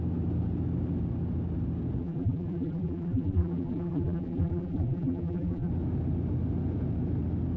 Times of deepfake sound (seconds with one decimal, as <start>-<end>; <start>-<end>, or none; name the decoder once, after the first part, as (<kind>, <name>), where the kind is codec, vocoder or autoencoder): 2.0-5.7 (vocoder, BigVGAN v2)